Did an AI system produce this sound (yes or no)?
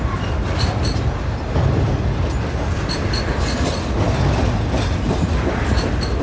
no